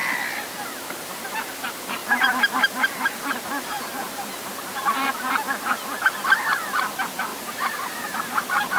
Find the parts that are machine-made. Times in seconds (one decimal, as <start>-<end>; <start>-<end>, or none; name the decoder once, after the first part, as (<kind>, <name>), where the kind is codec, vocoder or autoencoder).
2.0-5.1 (vocoder, BigVGAN v2); 7.3-8.4